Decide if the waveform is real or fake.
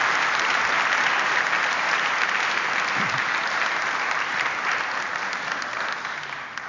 real